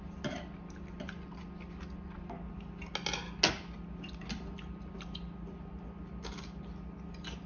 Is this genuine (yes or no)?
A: yes